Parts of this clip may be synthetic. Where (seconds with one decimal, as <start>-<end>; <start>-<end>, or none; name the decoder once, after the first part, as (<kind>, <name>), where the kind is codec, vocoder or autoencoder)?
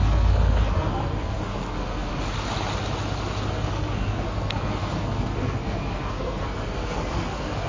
0.0-2.1 (codec, SNAC); 3.5-7.7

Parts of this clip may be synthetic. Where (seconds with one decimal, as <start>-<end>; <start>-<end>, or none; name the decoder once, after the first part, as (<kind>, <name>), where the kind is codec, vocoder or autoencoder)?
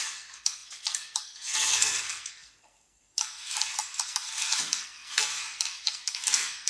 0.0-6.7 (codec, SNAC)